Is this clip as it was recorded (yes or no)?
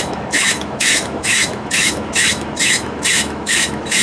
no